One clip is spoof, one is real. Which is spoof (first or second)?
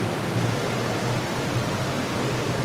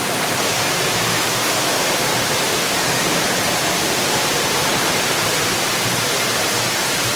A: second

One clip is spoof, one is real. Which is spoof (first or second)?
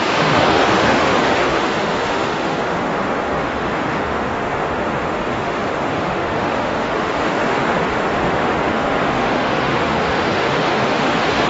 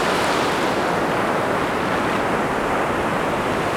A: first